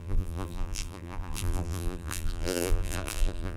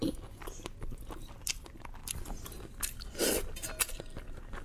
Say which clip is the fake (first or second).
first